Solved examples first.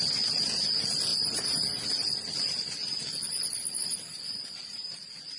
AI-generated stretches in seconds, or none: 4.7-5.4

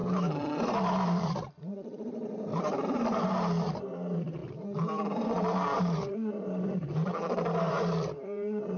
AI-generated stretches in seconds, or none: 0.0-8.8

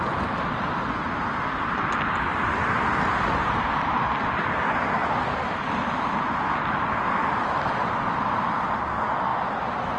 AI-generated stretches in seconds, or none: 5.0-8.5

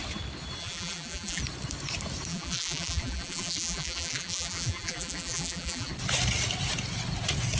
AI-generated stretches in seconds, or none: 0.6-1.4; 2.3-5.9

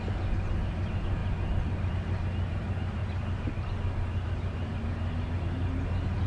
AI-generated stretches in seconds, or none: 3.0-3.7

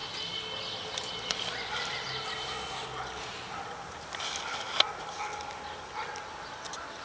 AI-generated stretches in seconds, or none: none

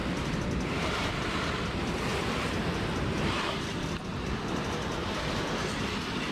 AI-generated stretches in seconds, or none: 0.0-1.1

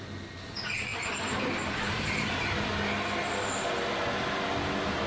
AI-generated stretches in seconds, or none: none